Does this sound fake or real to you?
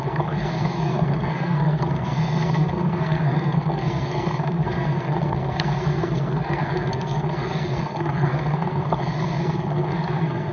fake